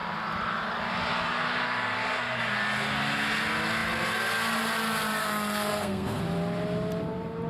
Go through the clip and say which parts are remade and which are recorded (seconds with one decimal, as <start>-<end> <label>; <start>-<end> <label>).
0.0-5.2 recorded; 5.2-6.2 remade; 6.2-7.5 recorded